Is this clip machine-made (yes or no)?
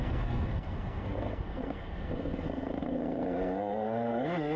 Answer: yes